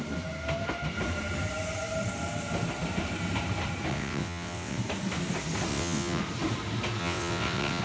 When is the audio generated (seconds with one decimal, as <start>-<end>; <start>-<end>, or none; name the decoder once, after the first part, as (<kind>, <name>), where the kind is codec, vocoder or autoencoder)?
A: 3.9-4.8 (vocoder, WaveNeXt); 5.7-6.2; 7.0-7.8